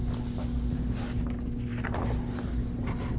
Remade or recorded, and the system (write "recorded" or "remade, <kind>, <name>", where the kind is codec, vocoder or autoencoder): recorded